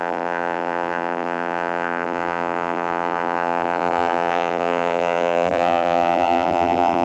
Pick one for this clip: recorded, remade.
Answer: remade